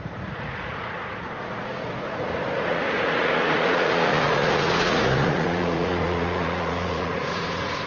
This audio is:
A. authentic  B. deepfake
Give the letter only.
B